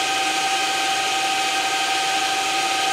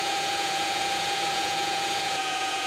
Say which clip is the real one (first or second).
first